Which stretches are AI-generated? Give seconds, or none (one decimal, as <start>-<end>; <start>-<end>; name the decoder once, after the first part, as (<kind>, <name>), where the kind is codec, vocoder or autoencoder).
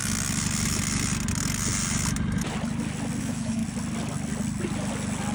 3.2-3.6 (autoencoder, DAC-VAE)